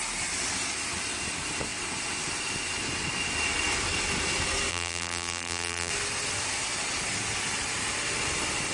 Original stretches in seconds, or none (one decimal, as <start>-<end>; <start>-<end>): 0.0-4.7; 5.9-8.7